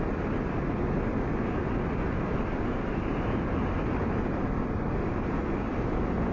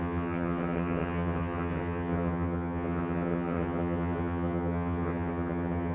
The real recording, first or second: first